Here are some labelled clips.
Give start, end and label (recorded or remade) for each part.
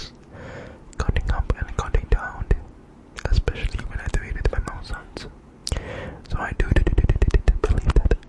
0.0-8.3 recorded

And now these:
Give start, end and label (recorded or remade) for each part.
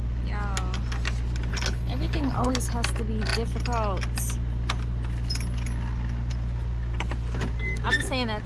0.0-1.5 recorded; 1.5-2.5 remade; 2.5-8.5 recorded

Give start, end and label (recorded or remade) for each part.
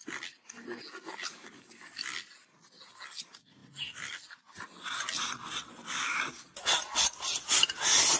0.0-1.3 recorded; 1.3-2.0 remade; 2.0-8.2 recorded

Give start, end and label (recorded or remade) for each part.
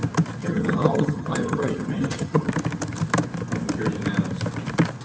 0.0-0.4 recorded; 0.4-2.5 remade; 2.5-5.0 recorded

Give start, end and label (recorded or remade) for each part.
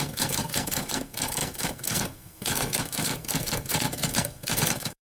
0.0-5.2 remade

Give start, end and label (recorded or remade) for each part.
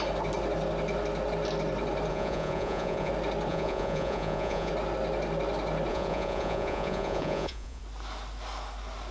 0.0-2.1 recorded; 2.1-3.1 remade; 3.1-3.5 recorded; 3.5-4.7 remade; 4.7-5.9 recorded; 5.9-7.8 remade; 7.8-9.1 recorded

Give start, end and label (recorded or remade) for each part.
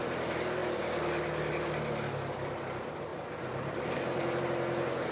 0.0-3.1 recorded; 3.1-4.4 remade; 4.4-5.1 recorded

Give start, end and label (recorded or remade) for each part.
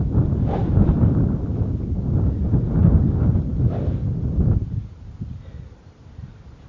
0.0-0.6 recorded; 0.6-2.4 remade; 2.4-3.5 recorded; 3.5-6.0 remade; 6.0-6.7 recorded